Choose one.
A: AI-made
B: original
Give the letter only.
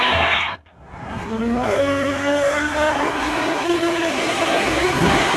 A